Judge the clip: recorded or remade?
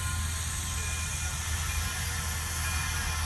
recorded